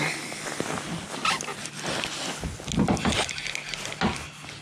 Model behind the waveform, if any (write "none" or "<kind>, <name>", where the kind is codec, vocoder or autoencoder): none